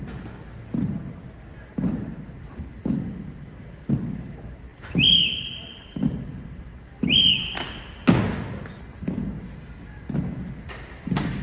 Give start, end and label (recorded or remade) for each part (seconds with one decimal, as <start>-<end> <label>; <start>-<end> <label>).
0.0-2.7 recorded; 2.7-3.9 remade; 3.9-4.7 recorded; 4.7-7.3 remade; 7.3-11.4 recorded